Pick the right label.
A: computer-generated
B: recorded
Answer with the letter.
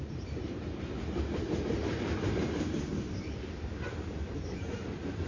A